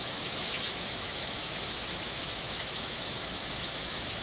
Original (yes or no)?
no